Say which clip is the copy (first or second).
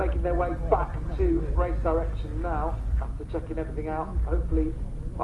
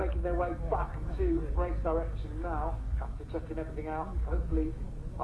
second